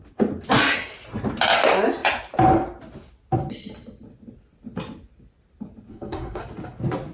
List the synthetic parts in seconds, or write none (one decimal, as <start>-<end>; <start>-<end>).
5.9-6.4